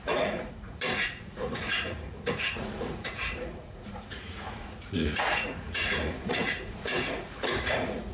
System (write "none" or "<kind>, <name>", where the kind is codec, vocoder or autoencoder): vocoder, Vocos